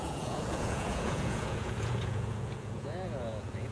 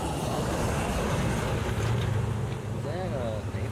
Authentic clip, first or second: second